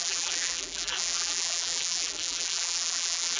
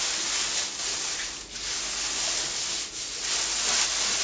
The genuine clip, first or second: second